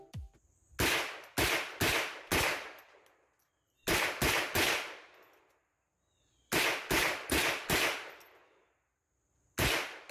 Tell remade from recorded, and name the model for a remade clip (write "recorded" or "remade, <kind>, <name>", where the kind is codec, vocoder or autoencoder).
recorded